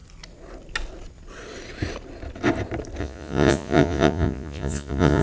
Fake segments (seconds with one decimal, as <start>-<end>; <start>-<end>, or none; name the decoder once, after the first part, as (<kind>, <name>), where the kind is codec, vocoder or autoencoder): 3.0-5.2 (vocoder, Vocos)